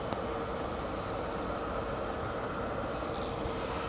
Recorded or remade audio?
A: recorded